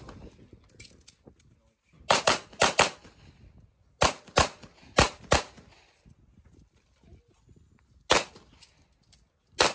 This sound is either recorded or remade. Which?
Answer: recorded